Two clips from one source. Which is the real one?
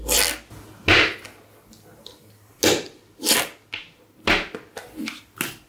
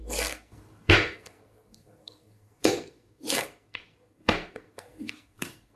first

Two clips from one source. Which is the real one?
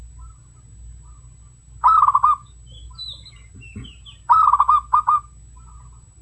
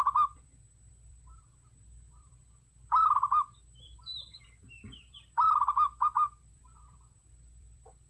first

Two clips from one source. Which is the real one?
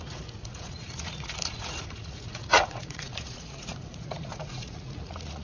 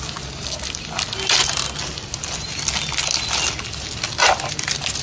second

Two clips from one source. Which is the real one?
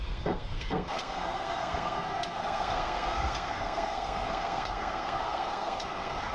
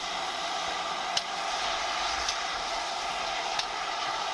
second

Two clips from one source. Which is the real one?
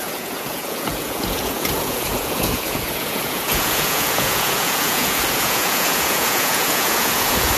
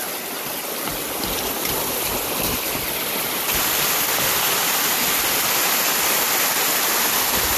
second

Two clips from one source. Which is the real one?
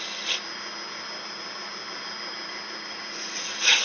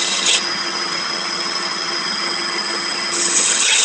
first